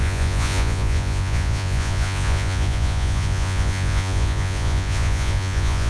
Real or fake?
fake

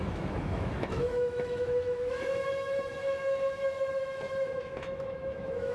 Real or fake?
fake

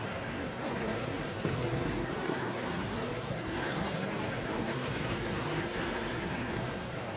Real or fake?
fake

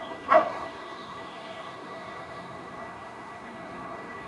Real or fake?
fake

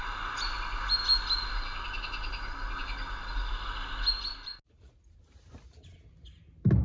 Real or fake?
real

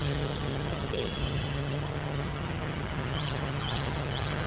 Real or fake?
fake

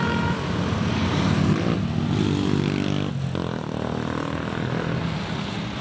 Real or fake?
real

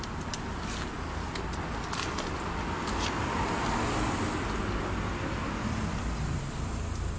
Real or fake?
real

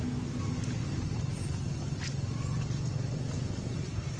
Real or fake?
real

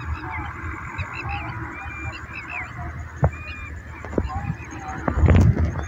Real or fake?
real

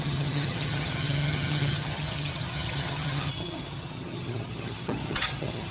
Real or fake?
fake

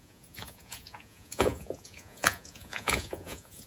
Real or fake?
fake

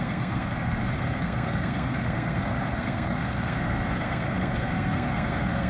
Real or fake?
fake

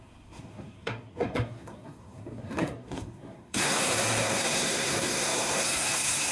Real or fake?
fake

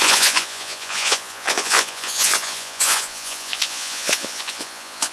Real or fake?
fake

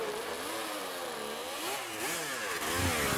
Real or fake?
real